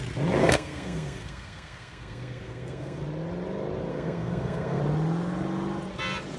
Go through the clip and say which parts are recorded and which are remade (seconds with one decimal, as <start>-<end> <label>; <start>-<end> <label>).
0.0-0.4 recorded; 0.4-3.0 remade; 3.0-3.9 recorded; 3.9-4.8 remade; 4.8-6.4 recorded